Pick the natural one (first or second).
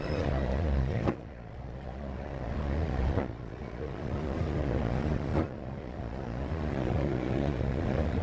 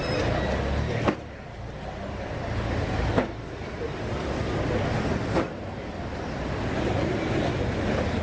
second